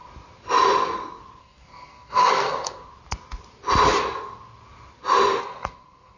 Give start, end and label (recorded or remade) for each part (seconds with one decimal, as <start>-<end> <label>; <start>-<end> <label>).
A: 0.0-1.4 recorded; 1.4-2.9 remade; 2.9-5.4 recorded; 5.4-6.2 remade